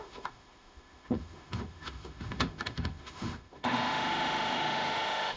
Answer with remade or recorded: remade